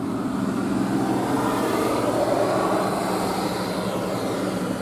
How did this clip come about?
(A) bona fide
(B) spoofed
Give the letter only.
A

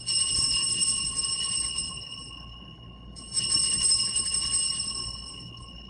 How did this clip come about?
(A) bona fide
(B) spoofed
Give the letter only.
B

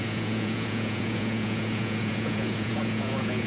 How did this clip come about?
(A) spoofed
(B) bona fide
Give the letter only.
A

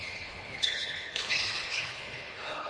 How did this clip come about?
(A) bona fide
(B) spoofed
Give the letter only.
B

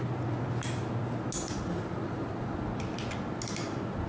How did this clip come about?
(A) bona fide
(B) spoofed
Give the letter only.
A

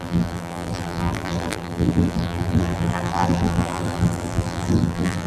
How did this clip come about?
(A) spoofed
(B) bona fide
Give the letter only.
A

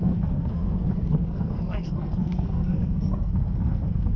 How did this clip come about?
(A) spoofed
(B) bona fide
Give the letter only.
A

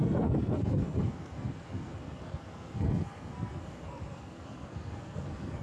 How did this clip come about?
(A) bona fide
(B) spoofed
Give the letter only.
B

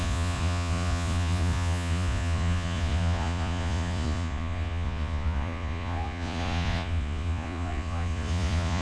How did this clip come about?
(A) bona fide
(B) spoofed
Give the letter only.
B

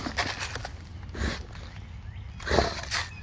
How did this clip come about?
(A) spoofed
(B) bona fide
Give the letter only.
B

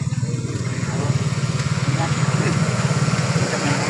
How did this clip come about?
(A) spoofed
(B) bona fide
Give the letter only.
A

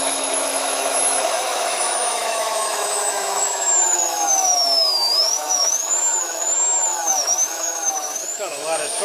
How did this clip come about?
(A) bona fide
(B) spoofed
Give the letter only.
B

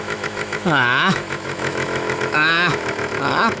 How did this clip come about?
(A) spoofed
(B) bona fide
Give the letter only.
A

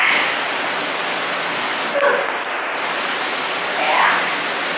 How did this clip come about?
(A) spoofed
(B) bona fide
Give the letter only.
B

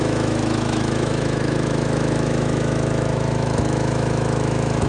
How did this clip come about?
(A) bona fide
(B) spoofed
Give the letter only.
B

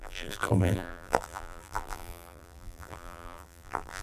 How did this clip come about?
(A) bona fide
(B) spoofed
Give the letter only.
B